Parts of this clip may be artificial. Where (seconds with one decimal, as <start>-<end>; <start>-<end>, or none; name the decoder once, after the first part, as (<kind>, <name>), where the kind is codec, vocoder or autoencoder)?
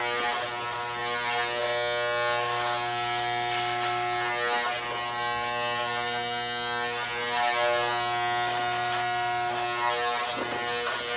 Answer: none